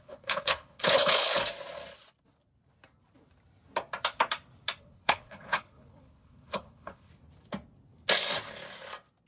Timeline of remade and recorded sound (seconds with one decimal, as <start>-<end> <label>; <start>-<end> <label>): 0.0-1.4 remade; 1.4-4.8 recorded; 4.8-7.1 remade; 7.1-9.3 recorded